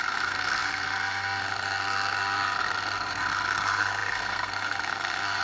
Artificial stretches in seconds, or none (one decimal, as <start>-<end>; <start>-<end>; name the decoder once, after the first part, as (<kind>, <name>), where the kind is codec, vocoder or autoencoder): 0.0-5.4 (codec, SNAC)